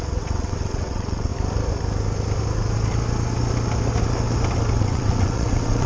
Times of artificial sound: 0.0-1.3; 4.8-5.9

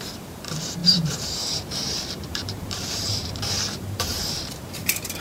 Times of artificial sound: 0.0-5.2

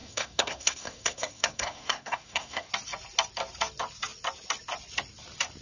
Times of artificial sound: 0.0-2.7